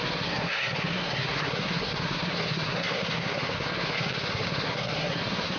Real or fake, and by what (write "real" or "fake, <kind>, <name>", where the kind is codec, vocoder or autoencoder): fake, codec, SNAC